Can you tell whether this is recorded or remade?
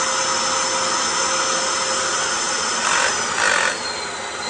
recorded